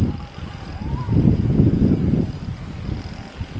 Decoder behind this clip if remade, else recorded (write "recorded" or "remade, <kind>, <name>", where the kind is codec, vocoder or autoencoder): recorded